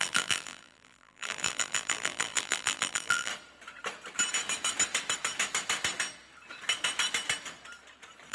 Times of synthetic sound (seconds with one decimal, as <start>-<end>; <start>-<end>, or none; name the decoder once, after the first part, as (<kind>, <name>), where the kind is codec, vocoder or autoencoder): 0.0-3.3 (vocoder, BigVGAN v2)

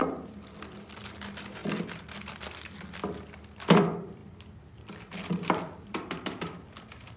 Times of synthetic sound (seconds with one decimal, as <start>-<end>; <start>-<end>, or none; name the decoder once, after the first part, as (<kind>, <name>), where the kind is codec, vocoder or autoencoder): 1.0-4.2 (vocoder, BigVGAN v2); 4.8-7.2

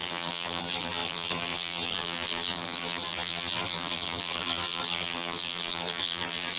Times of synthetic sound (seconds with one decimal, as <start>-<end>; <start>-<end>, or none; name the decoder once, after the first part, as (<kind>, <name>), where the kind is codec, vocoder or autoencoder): 0.0-6.6 (vocoder, BigVGAN v2)

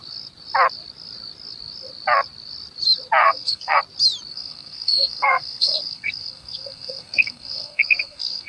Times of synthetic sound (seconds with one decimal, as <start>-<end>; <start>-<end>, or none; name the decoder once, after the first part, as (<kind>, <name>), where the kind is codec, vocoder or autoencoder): 3.2-3.8 (codec, SNAC); 4.3-8.5

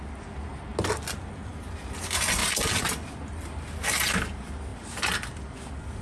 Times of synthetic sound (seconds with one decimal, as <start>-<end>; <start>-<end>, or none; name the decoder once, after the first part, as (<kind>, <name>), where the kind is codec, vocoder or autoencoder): none

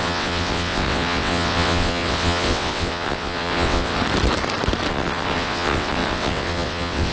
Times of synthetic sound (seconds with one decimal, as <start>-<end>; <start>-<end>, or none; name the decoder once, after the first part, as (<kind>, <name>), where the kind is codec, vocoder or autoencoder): 0.0-4.0 (vocoder, WaveNeXt); 4.9-7.1